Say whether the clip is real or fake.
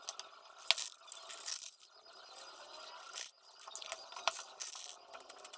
real